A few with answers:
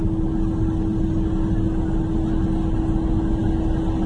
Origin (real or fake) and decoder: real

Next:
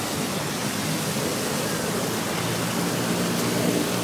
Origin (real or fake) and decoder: real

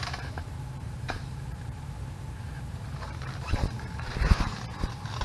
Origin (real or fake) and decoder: fake, vocoder, BigVGAN v2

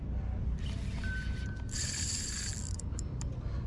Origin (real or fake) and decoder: real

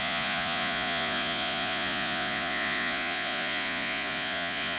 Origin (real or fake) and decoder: fake, vocoder, Vocos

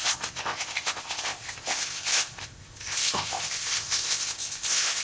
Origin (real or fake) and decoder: fake, codec, ZipCodec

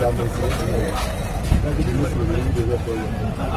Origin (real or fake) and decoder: real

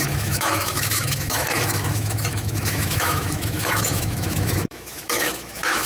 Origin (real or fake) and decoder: fake, autoencoder, DAC-VAE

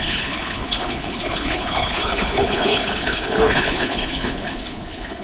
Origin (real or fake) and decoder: fake, codec, HILCodec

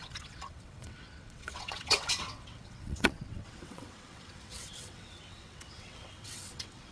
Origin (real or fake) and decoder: fake, vocoder, WaveNeXt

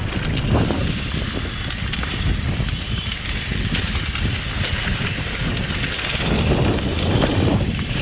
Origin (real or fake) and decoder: real